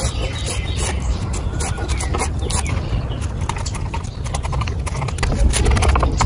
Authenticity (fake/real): real